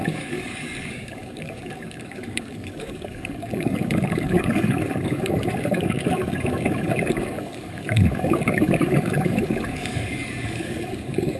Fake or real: fake